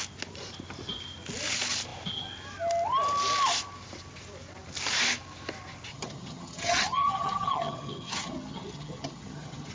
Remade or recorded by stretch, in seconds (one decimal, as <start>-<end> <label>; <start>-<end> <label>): 0.0-5.9 recorded; 5.9-9.7 remade

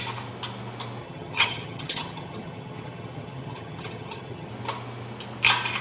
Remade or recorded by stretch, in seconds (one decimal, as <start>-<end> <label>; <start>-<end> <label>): 0.0-1.0 recorded; 1.0-4.5 remade; 4.5-5.8 recorded

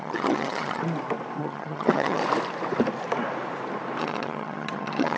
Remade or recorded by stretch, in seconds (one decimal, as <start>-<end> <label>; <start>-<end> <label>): 0.0-0.8 remade; 0.8-1.4 recorded; 1.4-2.2 remade; 2.2-4.0 recorded; 4.0-5.2 remade

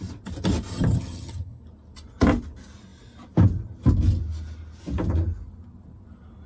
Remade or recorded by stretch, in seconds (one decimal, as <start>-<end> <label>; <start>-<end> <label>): 0.0-0.7 recorded; 0.7-1.6 remade; 1.6-6.5 recorded

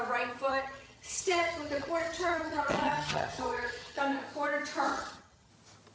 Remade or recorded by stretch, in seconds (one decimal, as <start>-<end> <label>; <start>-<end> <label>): 0.0-0.5 recorded; 0.5-4.0 remade; 4.0-4.9 recorded; 4.9-5.5 remade; 5.5-5.9 recorded

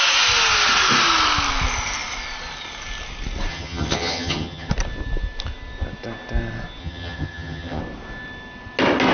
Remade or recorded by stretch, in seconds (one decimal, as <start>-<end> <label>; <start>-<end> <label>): 0.0-3.5 recorded; 3.5-4.7 remade; 4.7-6.8 recorded; 6.8-7.8 remade; 7.8-9.1 recorded

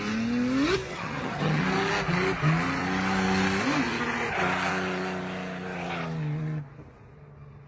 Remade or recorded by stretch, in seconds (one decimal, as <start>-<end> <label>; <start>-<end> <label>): 0.0-0.9 recorded; 0.9-1.6 remade; 1.6-7.7 recorded